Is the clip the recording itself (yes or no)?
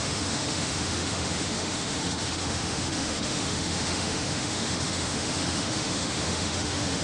no